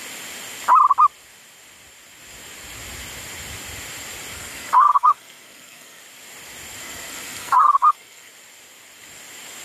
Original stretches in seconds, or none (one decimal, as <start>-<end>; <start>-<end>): 0.0-4.3; 6.0-6.8; 8.3-9.6